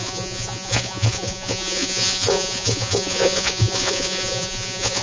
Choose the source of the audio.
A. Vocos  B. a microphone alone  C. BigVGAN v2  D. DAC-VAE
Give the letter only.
A